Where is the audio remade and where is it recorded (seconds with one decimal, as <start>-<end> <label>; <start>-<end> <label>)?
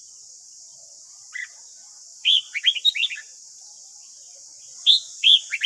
0.0-0.7 recorded; 0.7-1.5 remade; 1.5-2.1 recorded; 2.1-5.7 remade